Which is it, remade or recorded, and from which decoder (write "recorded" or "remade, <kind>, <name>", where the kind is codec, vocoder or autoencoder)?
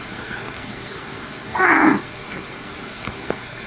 remade, codec, SNAC